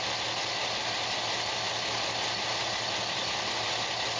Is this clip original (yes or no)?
yes